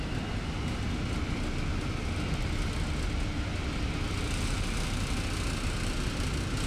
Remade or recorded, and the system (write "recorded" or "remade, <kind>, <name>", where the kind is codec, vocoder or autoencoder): recorded